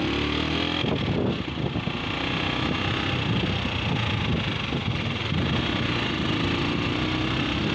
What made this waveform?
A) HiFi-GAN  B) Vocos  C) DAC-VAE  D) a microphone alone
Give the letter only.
D